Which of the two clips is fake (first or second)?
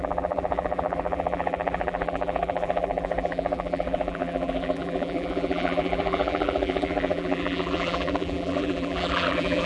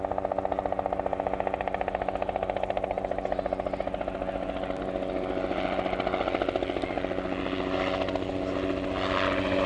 first